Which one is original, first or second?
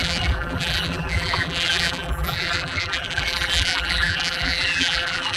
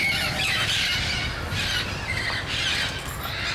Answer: second